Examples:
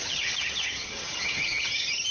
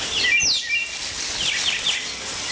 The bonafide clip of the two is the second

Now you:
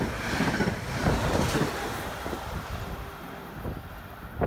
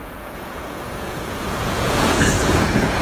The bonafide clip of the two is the first